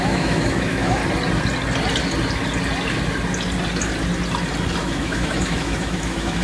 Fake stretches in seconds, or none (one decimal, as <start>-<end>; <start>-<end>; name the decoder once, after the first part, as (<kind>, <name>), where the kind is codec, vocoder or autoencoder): 0.0-1.0 (autoencoder, DAC-VAE); 4.8-6.4